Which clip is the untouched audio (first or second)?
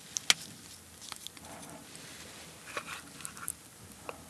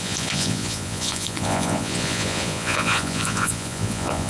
first